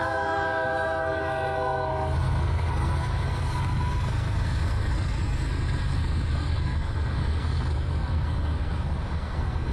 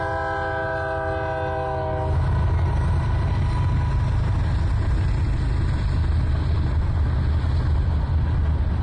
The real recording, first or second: second